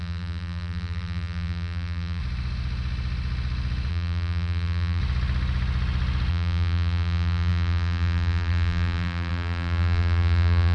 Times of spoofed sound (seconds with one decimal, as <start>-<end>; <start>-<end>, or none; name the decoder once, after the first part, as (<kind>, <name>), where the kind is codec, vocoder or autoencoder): 0.0-2.2 (vocoder, BigVGAN v2); 3.9-5.0; 6.3-10.7

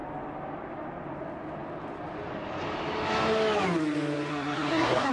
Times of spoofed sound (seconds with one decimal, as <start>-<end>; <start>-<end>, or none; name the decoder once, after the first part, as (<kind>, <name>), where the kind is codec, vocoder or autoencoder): 4.3-5.1 (codec, SNAC)

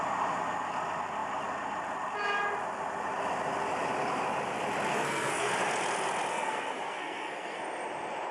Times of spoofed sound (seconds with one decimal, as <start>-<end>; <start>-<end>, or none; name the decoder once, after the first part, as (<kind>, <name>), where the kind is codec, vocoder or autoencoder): 4.9-5.5 (codec, SNAC); 6.3-7.6

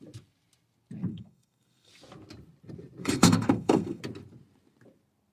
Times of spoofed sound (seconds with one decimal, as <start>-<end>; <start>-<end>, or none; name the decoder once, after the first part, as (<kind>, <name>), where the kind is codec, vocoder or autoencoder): 1.1-1.9 (codec, SNAC); 3.0-4.0

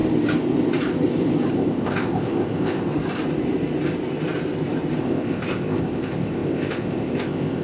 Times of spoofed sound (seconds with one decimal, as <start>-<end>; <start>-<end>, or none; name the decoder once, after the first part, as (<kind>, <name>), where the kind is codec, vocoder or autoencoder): 1.5-2.9 (codec, ZipCodec); 5.0-7.6